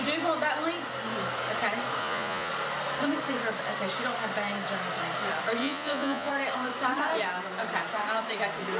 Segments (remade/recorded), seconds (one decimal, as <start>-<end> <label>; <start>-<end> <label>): 0.0-2.0 recorded; 2.0-2.5 remade; 2.5-5.6 recorded; 5.6-6.3 remade; 6.3-8.8 recorded